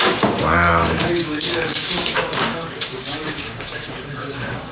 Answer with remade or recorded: remade